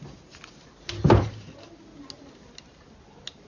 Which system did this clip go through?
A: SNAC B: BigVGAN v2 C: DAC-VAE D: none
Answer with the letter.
D